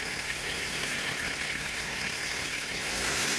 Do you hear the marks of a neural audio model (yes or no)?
yes